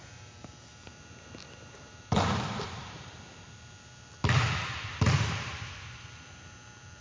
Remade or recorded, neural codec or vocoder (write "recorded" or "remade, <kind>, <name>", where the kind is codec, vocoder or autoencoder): remade, vocoder, BigVGAN v2